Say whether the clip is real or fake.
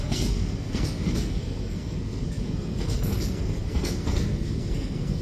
fake